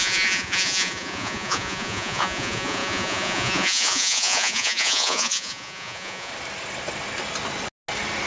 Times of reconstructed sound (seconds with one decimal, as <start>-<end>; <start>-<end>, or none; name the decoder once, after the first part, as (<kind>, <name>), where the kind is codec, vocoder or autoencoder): 0.0-6.3 (vocoder, Vocos)